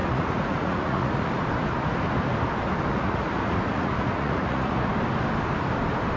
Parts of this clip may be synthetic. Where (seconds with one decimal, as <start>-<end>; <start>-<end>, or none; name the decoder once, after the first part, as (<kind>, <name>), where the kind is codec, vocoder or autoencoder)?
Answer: 0.0-1.3 (vocoder, Vocos); 2.9-4.9